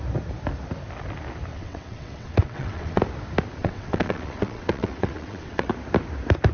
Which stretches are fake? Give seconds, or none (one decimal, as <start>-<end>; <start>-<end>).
1.5-3.0; 3.6-5.7